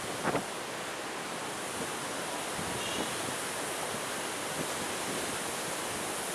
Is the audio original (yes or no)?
yes